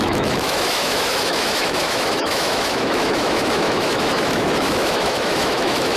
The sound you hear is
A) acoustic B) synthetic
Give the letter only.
B